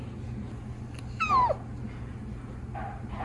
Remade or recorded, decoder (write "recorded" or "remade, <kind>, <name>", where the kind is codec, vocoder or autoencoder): recorded